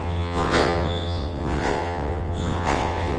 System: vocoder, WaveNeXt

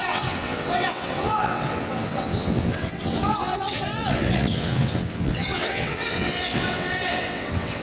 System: vocoder, WaveNeXt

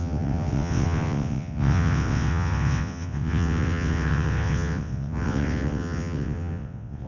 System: vocoder, WaveNeXt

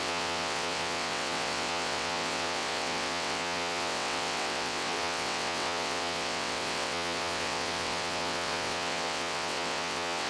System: vocoder, WaveNeXt